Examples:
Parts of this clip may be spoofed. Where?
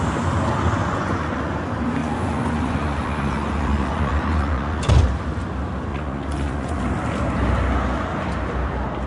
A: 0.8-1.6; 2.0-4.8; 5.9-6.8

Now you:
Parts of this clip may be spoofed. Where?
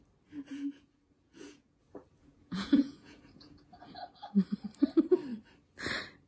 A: 0.5-1.8; 2.2-4.0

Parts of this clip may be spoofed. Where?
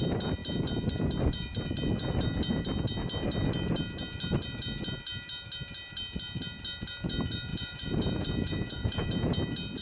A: 7.5-9.1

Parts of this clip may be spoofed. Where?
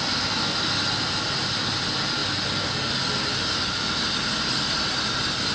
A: none